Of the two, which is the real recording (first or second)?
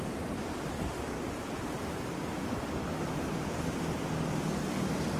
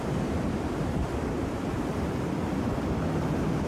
first